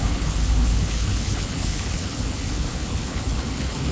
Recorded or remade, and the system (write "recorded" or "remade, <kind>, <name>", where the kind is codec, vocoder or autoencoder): remade, codec, HILCodec